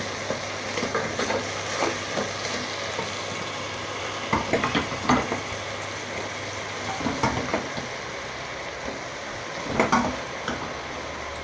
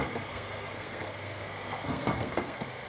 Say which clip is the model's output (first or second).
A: second